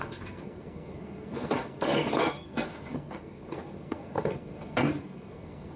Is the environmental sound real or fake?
fake